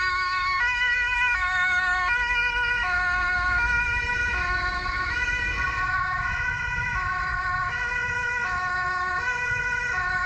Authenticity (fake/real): fake